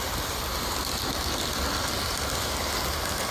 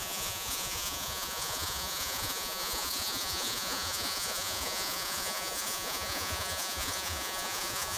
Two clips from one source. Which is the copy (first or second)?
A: second